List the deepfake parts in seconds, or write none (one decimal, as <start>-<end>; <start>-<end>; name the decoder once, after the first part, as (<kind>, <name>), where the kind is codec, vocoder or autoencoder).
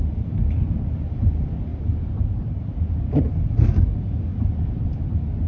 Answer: 1.7-3.1 (vocoder, BigVGAN v2); 4.3-5.1